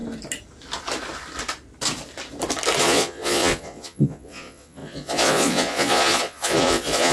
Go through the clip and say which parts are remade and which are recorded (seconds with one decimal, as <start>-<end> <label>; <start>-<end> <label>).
0.0-2.8 recorded; 2.8-7.1 remade